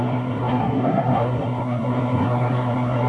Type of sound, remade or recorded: remade